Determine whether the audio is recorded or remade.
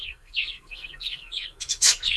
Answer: remade